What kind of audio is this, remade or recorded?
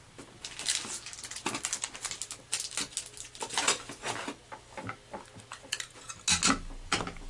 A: recorded